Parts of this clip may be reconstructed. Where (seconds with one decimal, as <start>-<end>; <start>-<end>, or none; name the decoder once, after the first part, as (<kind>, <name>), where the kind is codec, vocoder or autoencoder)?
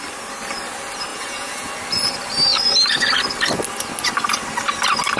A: 1.1-1.7 (vocoder, Vocos)